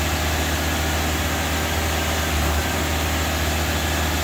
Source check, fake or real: real